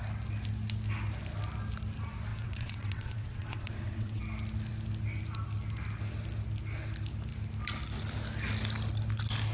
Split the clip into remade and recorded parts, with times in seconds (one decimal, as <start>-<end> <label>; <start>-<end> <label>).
0.0-2.3 recorded; 2.3-4.2 remade; 4.2-9.5 recorded